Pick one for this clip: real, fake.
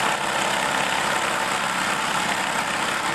real